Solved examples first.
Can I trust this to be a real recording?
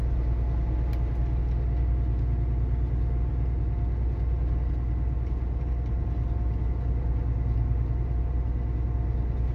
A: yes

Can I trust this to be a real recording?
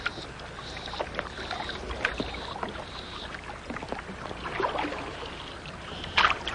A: yes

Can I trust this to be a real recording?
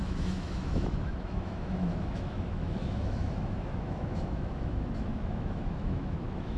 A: no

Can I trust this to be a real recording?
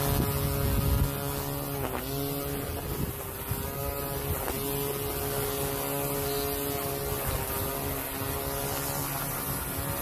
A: yes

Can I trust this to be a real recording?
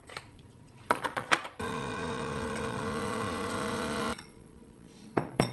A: no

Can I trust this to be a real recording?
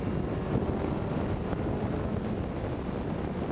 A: yes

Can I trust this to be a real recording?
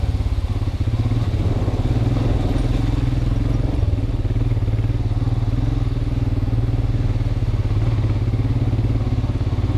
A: yes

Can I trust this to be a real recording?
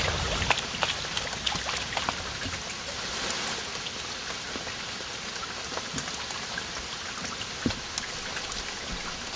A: yes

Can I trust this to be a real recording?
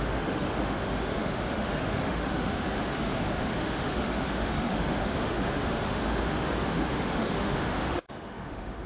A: no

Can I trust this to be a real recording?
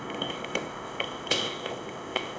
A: no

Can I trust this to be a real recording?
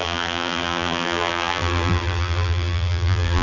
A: no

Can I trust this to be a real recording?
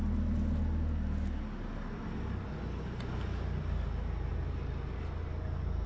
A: yes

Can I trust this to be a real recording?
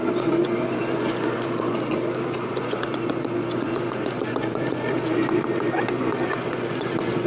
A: no